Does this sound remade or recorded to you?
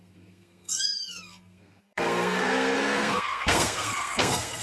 remade